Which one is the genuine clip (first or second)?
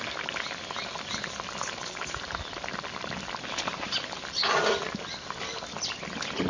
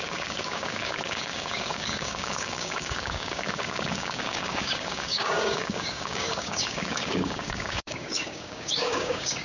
first